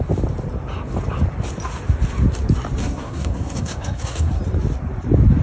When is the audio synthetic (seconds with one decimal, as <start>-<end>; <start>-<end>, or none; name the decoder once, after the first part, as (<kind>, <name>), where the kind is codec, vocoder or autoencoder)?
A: 2.8-4.4 (codec, SNAC)